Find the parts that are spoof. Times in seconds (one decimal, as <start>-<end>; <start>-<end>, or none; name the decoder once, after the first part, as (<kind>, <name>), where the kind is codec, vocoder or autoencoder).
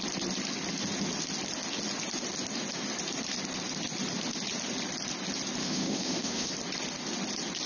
5.6-6.5 (autoencoder, DAC-VAE)